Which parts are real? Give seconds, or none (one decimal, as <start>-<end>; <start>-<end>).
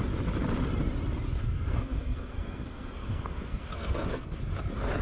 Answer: 0.0-1.4; 4.4-5.0